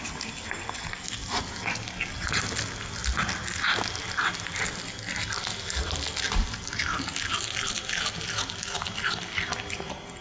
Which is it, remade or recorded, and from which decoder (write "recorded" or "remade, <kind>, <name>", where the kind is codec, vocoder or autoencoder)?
recorded